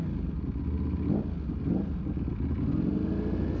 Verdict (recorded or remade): recorded